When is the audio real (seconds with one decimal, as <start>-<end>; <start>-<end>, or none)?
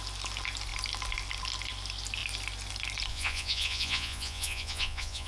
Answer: 0.0-3.1